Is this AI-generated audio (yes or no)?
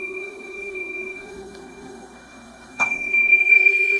yes